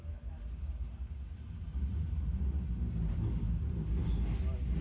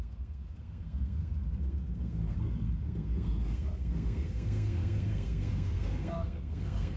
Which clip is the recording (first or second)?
first